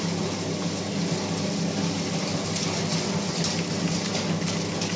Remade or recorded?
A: recorded